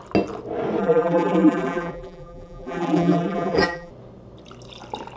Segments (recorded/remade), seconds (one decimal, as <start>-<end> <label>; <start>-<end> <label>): 0.0-0.8 recorded; 0.8-3.9 remade; 3.9-5.2 recorded

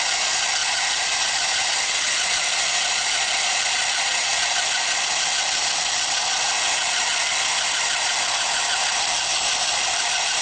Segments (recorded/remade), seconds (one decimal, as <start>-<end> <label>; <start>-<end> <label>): 0.0-0.6 recorded; 0.6-3.0 remade; 3.0-10.4 recorded